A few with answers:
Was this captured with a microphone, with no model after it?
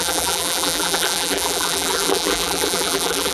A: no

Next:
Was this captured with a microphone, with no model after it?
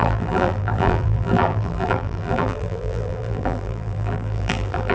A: no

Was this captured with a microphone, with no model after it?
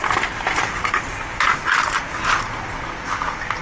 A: yes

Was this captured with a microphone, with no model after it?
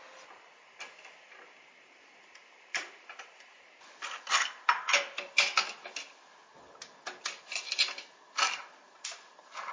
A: yes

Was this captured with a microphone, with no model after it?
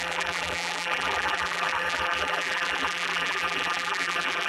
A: no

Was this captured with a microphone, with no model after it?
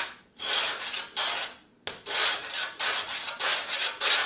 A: yes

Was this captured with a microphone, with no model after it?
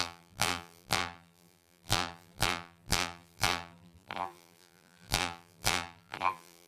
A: no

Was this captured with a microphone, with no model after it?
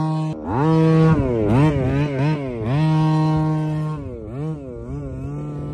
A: yes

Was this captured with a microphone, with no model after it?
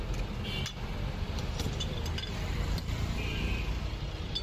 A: yes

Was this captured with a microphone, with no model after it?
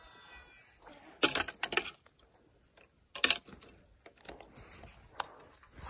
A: yes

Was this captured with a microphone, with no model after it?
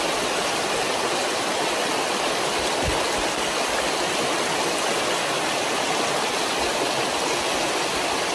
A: yes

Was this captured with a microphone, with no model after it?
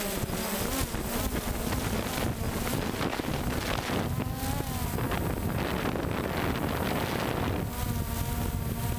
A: yes